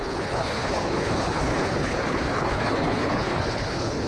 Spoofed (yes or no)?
yes